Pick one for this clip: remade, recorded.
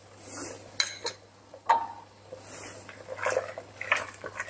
recorded